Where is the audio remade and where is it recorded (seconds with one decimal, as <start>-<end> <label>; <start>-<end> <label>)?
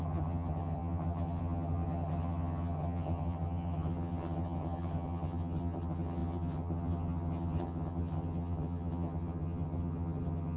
0.0-10.6 remade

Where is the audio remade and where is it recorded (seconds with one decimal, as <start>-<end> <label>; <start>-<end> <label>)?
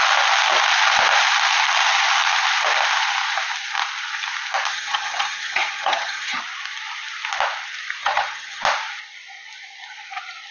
0.0-4.7 recorded; 4.7-6.4 remade; 6.4-8.0 recorded; 8.0-8.6 remade; 8.6-10.5 recorded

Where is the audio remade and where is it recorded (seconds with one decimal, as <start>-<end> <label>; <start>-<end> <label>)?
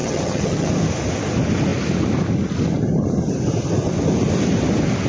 0.0-0.7 remade; 0.7-5.1 recorded